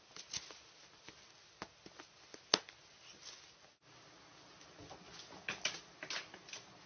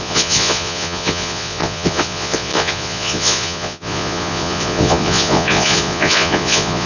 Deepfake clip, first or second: second